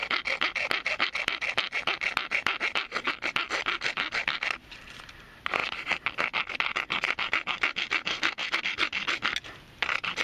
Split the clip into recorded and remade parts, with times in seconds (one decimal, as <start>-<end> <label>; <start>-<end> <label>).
0.0-8.1 recorded; 8.1-8.6 remade; 8.6-10.2 recorded